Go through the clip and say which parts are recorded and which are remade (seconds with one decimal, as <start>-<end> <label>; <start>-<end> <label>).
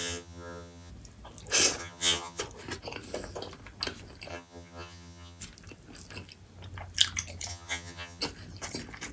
0.0-0.9 remade; 0.9-1.8 recorded; 1.8-2.4 remade; 2.4-4.3 recorded; 4.3-5.4 remade; 5.4-7.5 recorded; 7.5-8.2 remade; 8.2-9.1 recorded